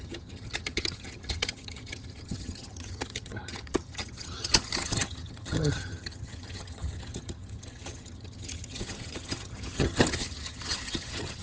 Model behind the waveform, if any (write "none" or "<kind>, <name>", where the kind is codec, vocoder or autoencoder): vocoder, HiFi-GAN